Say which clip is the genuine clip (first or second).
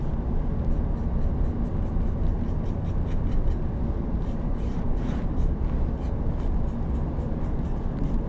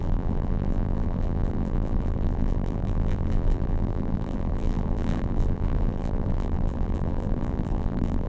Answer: first